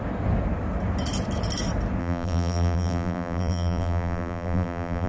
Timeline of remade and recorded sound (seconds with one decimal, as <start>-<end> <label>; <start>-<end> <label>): 0.0-2.0 recorded; 2.0-5.1 remade